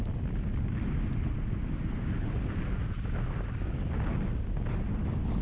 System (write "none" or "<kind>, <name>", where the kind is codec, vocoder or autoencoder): none